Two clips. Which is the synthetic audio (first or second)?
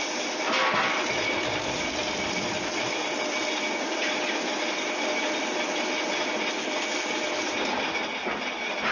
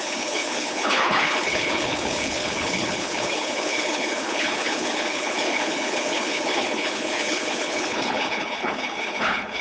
second